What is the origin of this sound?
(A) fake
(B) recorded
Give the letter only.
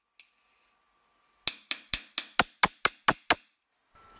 B